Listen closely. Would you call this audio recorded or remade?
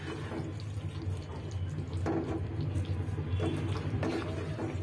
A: recorded